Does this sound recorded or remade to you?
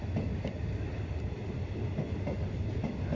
recorded